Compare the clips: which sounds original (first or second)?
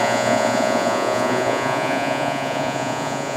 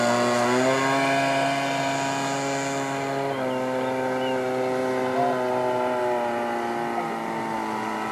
second